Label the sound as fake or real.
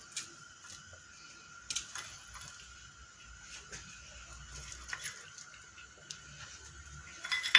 real